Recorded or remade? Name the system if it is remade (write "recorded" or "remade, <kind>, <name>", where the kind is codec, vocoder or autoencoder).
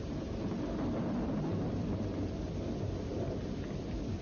recorded